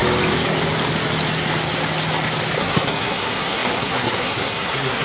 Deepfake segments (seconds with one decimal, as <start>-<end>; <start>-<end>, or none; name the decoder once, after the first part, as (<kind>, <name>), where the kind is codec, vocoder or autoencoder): 2.6-5.0 (codec, SNAC)